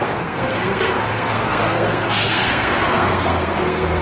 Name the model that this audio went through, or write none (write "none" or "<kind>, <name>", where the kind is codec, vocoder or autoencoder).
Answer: codec, SNAC